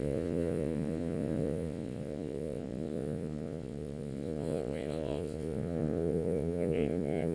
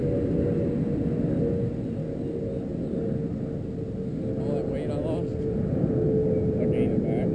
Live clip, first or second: second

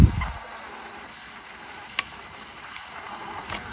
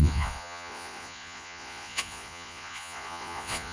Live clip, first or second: first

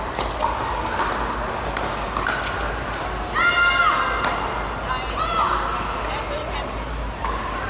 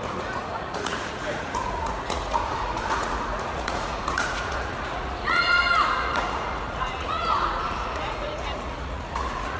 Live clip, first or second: first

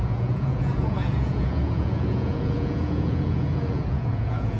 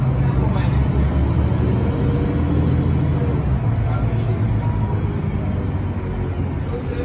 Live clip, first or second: second